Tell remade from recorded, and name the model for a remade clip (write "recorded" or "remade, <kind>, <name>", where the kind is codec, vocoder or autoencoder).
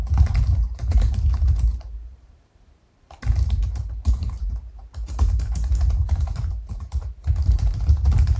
remade, vocoder, BigVGAN v2